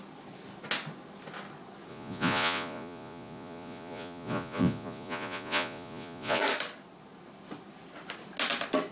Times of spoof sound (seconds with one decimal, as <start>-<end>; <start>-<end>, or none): 1.9-6.4